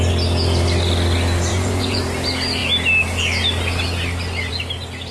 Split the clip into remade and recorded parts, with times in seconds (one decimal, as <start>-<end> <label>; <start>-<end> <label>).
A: 0.0-1.5 recorded; 1.5-2.0 remade; 2.0-5.1 recorded